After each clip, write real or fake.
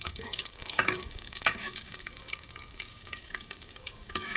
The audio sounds fake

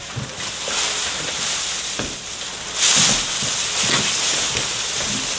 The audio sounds real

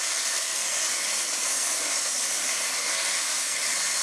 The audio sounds fake